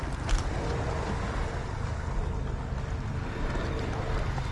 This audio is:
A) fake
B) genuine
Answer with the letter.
B